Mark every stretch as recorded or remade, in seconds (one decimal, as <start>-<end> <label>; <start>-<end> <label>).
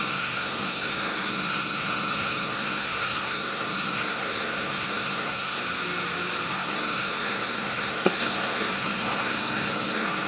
0.0-5.6 remade; 5.6-6.5 recorded; 6.5-10.3 remade